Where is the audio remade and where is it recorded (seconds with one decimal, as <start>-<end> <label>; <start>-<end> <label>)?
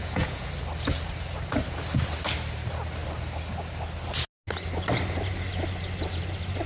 0.0-0.5 remade; 0.5-6.7 recorded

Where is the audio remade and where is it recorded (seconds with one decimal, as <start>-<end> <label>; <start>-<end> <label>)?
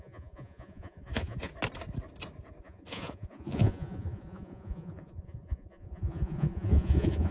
0.0-1.5 remade; 1.5-2.6 recorded; 2.6-7.3 remade